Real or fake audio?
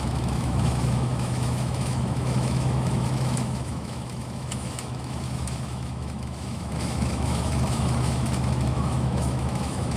fake